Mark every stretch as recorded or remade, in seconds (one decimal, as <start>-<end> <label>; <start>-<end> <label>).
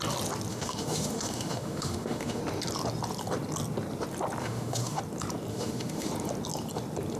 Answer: 0.0-0.5 recorded; 0.5-2.4 remade; 2.4-4.4 recorded; 4.4-5.0 remade; 5.0-5.5 recorded; 5.5-6.1 remade; 6.1-7.2 recorded